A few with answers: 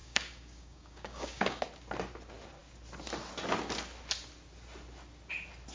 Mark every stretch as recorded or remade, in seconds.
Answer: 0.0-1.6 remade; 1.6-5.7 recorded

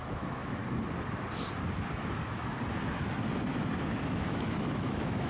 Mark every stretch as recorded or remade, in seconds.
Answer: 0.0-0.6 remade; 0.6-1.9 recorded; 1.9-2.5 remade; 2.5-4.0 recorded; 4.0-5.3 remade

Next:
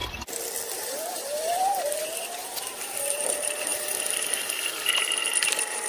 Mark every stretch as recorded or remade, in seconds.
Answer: 0.0-0.7 recorded; 0.7-5.9 remade

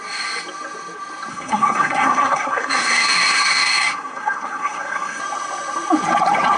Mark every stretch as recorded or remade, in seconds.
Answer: 0.0-1.3 recorded; 1.3-5.2 remade; 5.2-6.6 recorded